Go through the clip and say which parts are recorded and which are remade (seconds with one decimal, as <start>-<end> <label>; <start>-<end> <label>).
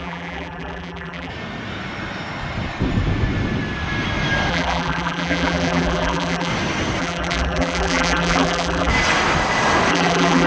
0.0-1.3 remade; 1.3-4.5 recorded; 4.5-6.5 remade; 6.5-7.0 recorded; 7.0-8.9 remade; 8.9-9.9 recorded; 9.9-10.5 remade